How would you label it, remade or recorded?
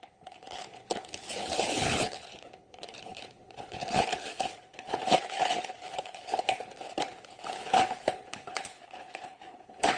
remade